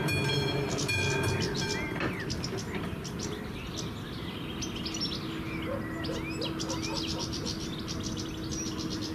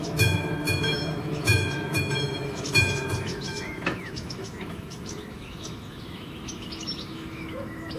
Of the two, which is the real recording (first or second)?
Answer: first